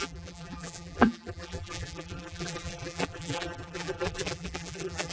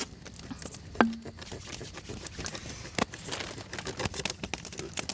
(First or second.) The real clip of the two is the second